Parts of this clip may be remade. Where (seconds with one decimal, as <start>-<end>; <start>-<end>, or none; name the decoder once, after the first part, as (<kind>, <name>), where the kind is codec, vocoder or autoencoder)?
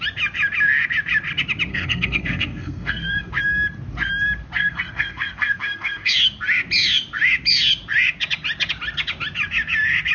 1.7-3.3 (codec, SNAC); 4.6-6.1